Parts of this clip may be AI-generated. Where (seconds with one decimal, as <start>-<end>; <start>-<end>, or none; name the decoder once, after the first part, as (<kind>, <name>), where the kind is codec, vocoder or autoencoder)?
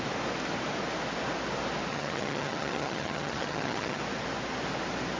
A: 1.9-4.0 (vocoder, HiFi-GAN)